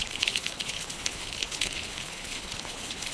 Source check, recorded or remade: remade